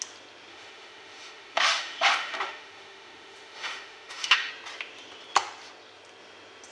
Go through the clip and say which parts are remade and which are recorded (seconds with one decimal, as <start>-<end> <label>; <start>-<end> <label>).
0.0-0.5 recorded; 0.5-4.5 remade; 4.5-6.7 recorded